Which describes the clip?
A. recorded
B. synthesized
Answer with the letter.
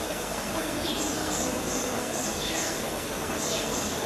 B